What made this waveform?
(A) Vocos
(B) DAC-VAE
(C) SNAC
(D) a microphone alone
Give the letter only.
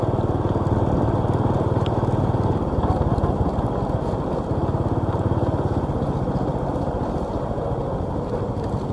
D